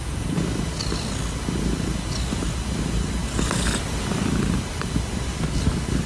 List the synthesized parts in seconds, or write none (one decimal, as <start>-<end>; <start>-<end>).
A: 5.3-6.1